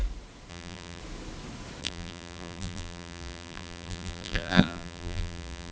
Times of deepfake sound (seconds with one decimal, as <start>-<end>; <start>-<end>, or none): 0.5-1.0; 1.8-5.7